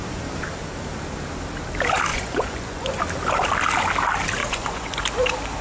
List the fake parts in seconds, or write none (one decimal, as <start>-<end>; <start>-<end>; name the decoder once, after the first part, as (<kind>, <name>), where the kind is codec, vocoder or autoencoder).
2.1-3.0 (vocoder, Vocos); 4.4-5.0